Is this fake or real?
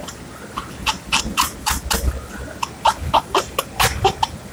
real